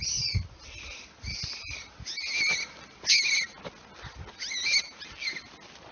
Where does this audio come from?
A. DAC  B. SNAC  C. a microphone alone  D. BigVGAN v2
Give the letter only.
C